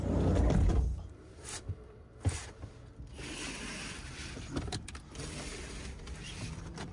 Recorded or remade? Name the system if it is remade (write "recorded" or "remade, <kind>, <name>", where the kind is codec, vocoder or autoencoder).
remade, vocoder, BigVGAN v2